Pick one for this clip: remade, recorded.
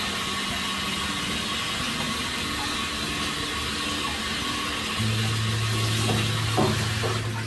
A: recorded